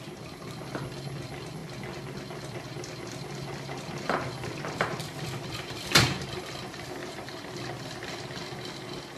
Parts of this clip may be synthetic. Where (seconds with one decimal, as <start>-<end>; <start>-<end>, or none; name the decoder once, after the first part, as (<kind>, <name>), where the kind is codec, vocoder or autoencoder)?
7.0-7.5 (vocoder, BigVGAN v2)